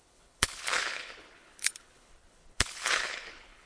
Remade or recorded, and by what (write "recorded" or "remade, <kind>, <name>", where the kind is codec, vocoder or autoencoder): remade, codec, HILCodec